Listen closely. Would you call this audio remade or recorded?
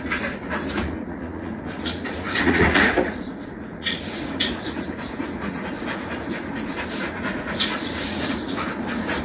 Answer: remade